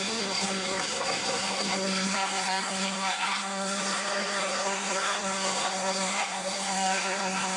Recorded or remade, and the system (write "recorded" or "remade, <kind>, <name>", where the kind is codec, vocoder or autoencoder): remade, codec, SNAC